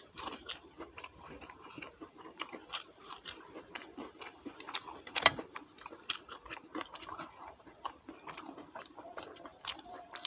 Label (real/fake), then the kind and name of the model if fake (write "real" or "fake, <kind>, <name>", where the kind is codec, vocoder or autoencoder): fake, vocoder, BigVGAN v2